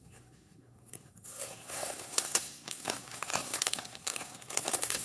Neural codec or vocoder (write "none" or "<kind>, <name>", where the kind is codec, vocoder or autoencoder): codec, SNAC